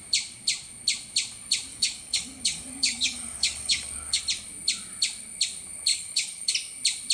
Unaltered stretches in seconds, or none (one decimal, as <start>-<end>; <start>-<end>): 0.0-1.7; 4.2-5.9; 6.5-7.1